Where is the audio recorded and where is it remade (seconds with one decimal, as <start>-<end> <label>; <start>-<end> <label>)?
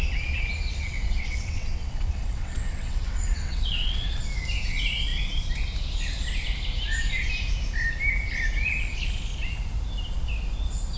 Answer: 0.0-0.7 recorded; 0.7-4.1 remade; 4.1-11.0 recorded